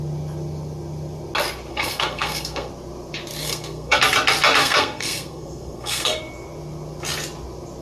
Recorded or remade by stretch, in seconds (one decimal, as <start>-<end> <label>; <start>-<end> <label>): 0.0-1.7 recorded; 1.7-2.7 remade; 2.7-3.4 recorded; 3.4-4.0 remade; 4.0-4.6 recorded; 4.6-6.2 remade; 6.2-7.8 recorded